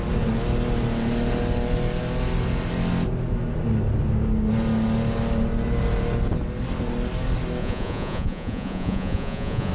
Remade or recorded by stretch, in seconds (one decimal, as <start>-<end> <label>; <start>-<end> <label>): 0.0-7.6 recorded; 7.6-9.7 remade